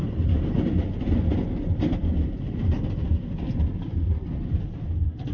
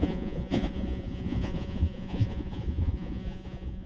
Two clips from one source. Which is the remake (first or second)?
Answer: second